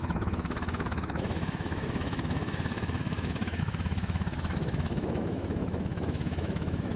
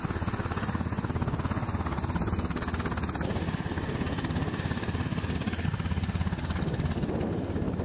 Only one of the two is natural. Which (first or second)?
second